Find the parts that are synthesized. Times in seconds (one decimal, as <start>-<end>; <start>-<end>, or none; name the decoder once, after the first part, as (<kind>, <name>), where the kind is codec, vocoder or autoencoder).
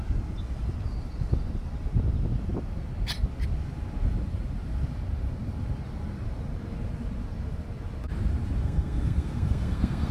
8.6-10.1 (codec, SNAC)